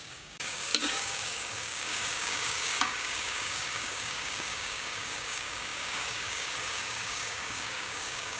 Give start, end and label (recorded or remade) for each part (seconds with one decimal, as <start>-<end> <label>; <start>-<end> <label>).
0.0-8.4 remade